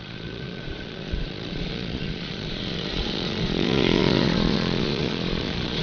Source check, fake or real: fake